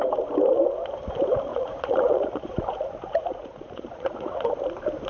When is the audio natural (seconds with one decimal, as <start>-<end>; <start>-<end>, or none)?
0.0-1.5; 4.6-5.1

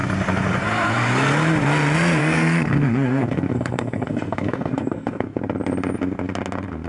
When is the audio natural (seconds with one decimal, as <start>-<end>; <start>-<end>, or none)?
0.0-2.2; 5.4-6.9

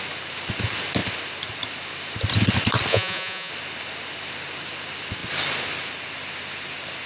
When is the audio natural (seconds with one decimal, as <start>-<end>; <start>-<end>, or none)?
0.0-2.9; 3.5-7.1